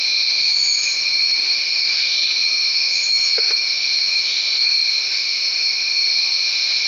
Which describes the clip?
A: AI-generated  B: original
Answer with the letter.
A